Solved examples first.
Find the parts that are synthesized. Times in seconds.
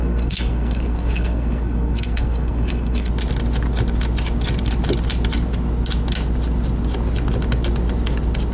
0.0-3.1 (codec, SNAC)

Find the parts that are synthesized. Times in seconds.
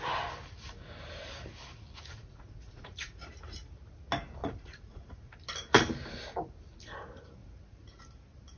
2.1-3.3 (vocoder, Vocos); 4.4-5.3; 7.4-8.0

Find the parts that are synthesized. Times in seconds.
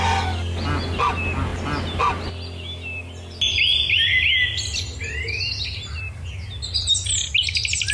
none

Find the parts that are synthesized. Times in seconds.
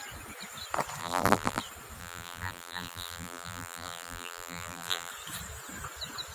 1.0-1.6 (vocoder, BigVGAN v2); 2.0-5.1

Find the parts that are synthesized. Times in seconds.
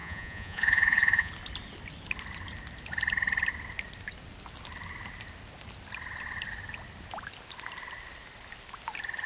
0.0-1.3 (vocoder, Vocos)